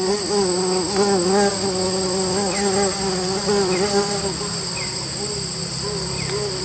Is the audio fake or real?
real